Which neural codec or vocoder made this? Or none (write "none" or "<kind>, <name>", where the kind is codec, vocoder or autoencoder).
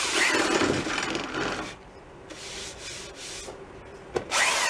none